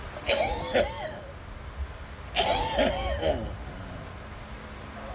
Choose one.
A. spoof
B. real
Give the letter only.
B